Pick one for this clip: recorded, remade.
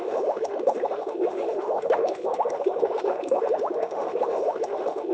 remade